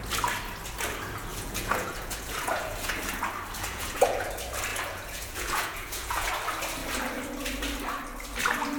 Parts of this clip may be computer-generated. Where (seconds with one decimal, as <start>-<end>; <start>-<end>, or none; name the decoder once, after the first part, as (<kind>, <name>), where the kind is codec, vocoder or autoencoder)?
1.3-2.9 (vocoder, Vocos); 3.7-4.3; 4.7-6.3